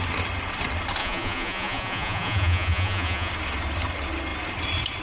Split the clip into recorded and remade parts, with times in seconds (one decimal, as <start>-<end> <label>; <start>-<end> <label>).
0.0-1.0 recorded; 1.0-3.3 remade; 3.3-5.0 recorded

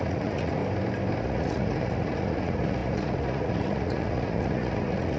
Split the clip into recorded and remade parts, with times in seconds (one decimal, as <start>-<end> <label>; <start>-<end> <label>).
0.0-0.6 remade; 0.6-1.2 recorded; 1.2-5.2 remade

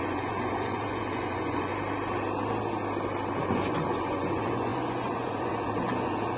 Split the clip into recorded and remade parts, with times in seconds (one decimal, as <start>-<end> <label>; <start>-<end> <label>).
0.0-1.7 remade; 1.7-3.4 recorded; 3.4-6.4 remade

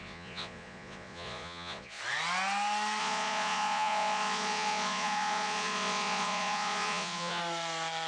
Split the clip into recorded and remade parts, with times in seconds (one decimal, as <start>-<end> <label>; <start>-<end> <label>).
0.0-2.0 remade; 2.0-3.0 recorded; 3.0-7.4 remade; 7.4-8.1 recorded